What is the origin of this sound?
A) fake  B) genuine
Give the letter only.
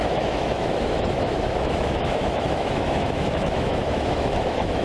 A